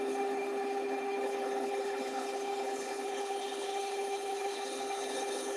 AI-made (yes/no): yes